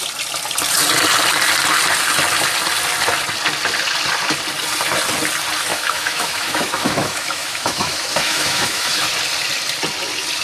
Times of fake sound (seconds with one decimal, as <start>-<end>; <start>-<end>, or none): 5.7-9.1